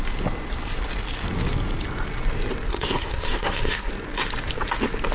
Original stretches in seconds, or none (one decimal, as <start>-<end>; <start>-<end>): 0.0-2.7; 3.9-5.1